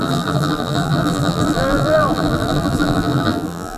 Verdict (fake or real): fake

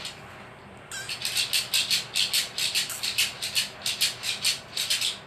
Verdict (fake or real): real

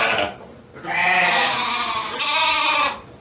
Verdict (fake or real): real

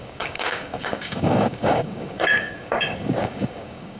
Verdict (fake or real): fake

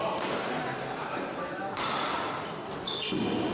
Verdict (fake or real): real